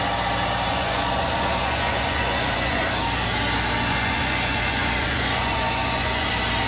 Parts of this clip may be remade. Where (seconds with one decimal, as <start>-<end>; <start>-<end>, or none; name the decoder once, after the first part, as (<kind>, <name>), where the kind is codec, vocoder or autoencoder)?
0.7-2.9 (vocoder, Vocos); 3.9-6.3